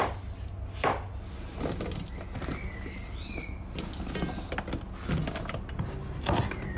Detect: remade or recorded recorded